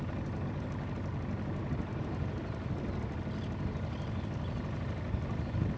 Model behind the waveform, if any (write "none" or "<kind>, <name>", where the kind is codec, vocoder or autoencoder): none